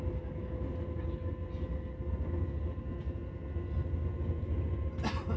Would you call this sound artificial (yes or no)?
no